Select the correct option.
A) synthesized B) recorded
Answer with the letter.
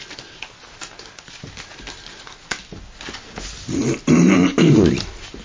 B